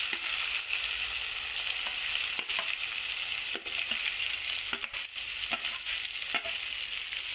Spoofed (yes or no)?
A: no